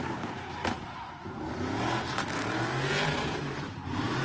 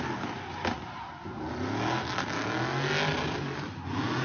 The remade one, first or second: first